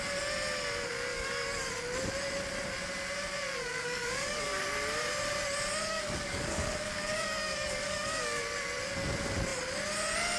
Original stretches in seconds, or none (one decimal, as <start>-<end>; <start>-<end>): 0.0-1.1; 1.7-3.6; 4.6-5.9; 8.4-10.4